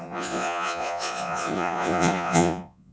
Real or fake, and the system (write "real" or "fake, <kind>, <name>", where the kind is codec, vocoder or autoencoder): fake, vocoder, Vocos